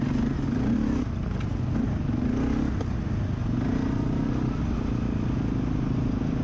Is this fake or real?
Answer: real